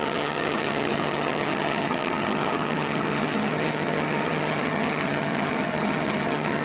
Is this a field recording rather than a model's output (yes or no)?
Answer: no